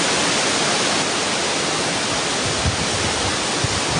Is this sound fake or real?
real